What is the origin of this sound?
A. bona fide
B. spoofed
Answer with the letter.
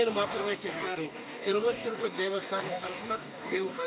B